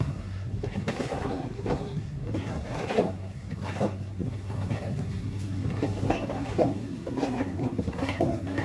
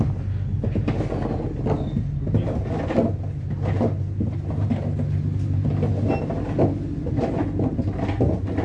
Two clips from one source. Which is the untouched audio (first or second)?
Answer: second